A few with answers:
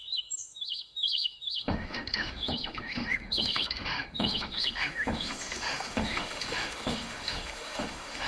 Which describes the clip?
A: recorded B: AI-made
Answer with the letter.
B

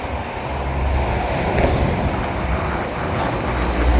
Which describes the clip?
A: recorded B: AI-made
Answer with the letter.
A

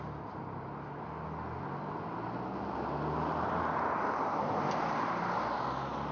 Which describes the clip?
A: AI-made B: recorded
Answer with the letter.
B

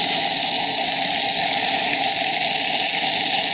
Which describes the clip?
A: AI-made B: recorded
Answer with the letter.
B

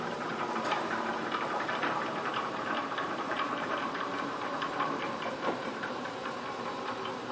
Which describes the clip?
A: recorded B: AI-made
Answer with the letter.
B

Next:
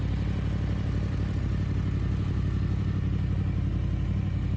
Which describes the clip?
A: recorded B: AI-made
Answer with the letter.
A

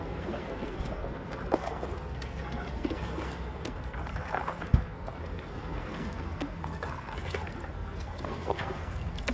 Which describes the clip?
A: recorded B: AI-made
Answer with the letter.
B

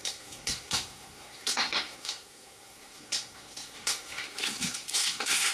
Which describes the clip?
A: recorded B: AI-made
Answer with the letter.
B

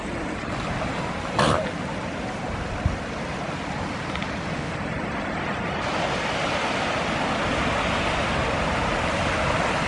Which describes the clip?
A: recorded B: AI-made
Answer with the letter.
A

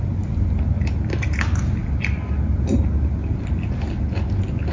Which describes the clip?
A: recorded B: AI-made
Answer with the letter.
A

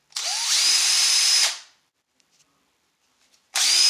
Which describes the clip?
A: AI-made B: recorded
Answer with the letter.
A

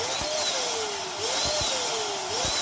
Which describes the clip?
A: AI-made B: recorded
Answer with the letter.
B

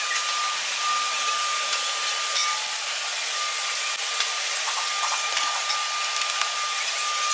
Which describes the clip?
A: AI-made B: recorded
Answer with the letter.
B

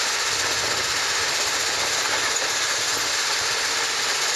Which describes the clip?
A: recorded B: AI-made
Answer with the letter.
A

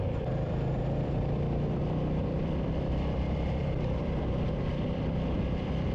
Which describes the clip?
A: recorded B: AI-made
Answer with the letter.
B